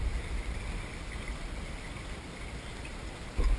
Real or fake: real